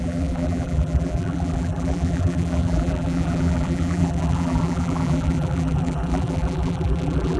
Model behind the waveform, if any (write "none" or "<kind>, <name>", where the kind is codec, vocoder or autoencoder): vocoder, BigVGAN v2